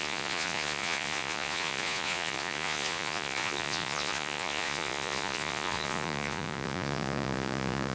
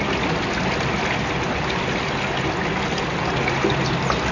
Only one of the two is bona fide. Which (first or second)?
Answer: second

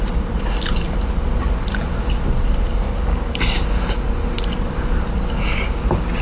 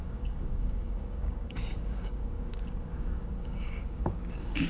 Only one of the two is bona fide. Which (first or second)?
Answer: first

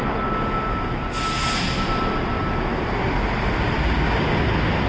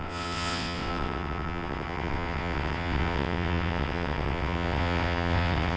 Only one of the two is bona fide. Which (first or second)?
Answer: first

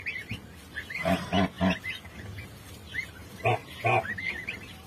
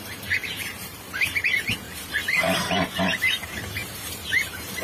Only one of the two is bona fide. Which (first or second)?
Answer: first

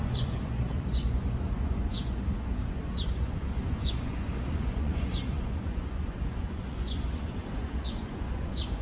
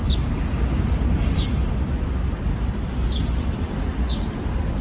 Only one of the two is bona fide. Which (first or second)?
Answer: second